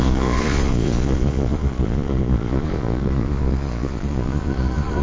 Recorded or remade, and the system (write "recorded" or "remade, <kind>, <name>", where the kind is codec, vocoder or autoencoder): remade, vocoder, Vocos